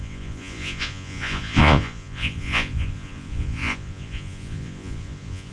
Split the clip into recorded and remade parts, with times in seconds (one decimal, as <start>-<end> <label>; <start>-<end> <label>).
0.0-5.5 remade